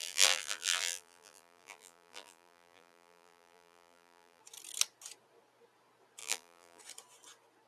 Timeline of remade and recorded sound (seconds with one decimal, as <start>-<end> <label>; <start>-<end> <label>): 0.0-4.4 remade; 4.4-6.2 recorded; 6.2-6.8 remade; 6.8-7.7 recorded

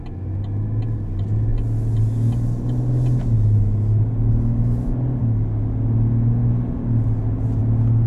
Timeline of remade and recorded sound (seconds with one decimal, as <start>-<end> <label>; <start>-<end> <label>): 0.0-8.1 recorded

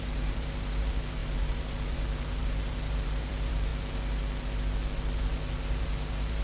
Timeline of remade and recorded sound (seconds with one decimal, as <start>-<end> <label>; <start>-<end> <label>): 0.0-3.7 remade; 3.7-5.2 recorded; 5.2-6.4 remade